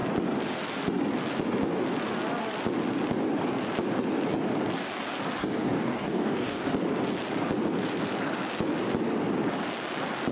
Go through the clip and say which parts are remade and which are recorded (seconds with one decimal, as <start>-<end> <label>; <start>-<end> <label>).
0.0-5.4 recorded; 5.4-6.7 remade; 6.7-10.3 recorded

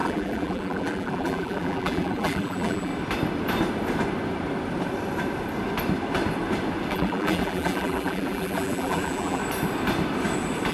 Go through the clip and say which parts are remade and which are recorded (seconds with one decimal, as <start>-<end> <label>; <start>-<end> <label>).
0.0-2.9 remade; 2.9-6.9 recorded; 6.9-9.4 remade; 9.4-10.7 recorded

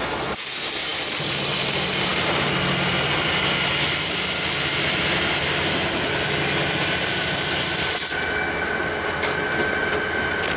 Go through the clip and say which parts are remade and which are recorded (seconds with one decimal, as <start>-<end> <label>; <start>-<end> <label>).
0.0-0.9 recorded; 0.9-1.5 remade; 1.5-7.1 recorded; 7.1-7.9 remade; 7.9-10.6 recorded

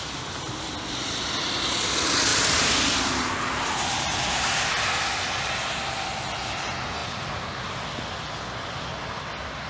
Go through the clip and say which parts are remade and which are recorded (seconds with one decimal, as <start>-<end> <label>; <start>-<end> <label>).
0.0-9.7 recorded

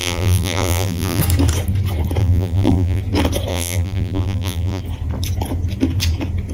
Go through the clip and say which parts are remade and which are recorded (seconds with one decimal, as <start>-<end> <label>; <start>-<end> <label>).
0.0-1.2 remade; 1.2-2.2 recorded; 2.2-3.0 remade; 3.0-3.5 recorded; 3.5-4.8 remade; 4.8-6.5 recorded

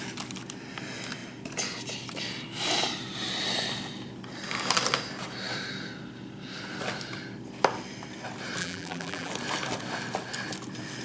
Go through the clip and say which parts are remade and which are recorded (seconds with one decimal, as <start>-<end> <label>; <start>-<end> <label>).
0.0-8.6 recorded; 8.6-9.3 remade; 9.3-11.0 recorded

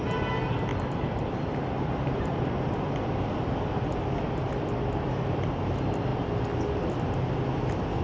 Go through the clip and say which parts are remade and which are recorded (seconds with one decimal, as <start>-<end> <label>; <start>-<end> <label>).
0.0-0.7 recorded; 0.7-2.9 remade; 2.9-8.0 recorded

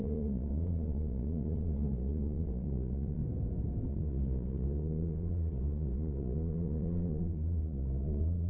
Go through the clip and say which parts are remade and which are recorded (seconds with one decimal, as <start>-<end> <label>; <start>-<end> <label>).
0.0-3.2 remade; 3.2-3.9 recorded; 3.9-8.5 remade